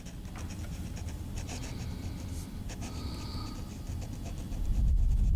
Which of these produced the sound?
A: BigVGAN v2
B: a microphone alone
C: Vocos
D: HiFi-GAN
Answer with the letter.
B